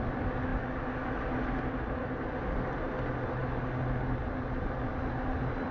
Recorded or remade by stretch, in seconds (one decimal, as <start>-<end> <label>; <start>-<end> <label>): 0.0-5.7 recorded

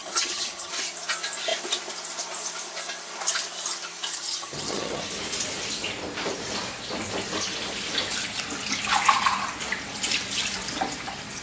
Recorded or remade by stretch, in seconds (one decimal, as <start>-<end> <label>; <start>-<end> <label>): 0.0-0.7 remade; 0.7-4.1 recorded; 4.1-5.0 remade; 5.0-11.4 recorded

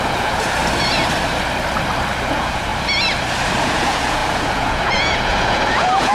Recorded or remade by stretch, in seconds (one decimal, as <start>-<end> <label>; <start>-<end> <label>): 0.0-0.6 remade; 0.6-2.3 recorded; 2.3-2.7 remade; 2.7-3.6 recorded; 3.6-6.1 remade

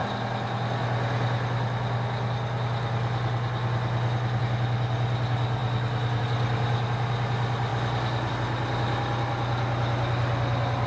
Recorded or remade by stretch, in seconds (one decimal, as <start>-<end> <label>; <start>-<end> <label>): 0.0-10.9 recorded

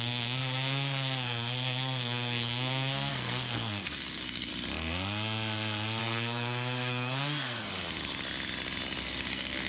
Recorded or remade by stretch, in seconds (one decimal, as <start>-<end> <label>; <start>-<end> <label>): 0.0-4.5 remade; 4.5-6.0 recorded; 6.0-7.7 remade; 7.7-9.0 recorded; 9.0-9.7 remade